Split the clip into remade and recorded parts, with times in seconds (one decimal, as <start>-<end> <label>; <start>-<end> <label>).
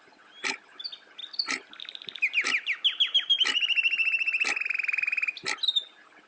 0.0-1.2 recorded; 1.2-1.8 remade; 1.8-6.3 recorded